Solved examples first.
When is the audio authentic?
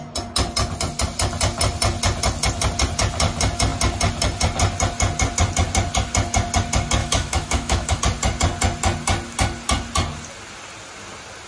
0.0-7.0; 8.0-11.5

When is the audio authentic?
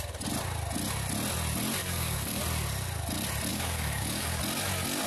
0.0-1.8; 2.4-3.5; 4.4-5.1